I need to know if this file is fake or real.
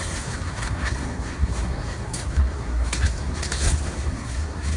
fake